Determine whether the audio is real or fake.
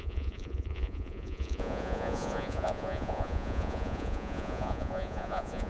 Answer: fake